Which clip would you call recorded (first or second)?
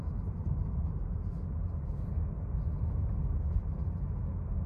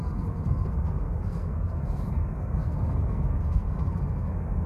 first